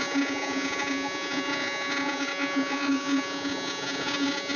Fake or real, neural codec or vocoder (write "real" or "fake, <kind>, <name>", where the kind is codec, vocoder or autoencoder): fake, vocoder, Vocos